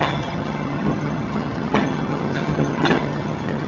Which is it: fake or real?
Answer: fake